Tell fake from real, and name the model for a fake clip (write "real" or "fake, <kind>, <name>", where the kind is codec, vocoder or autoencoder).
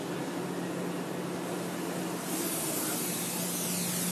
real